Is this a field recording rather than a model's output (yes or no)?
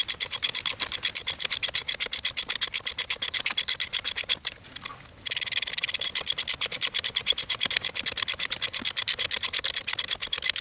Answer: yes